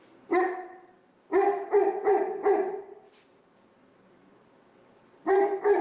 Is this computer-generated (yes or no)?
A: no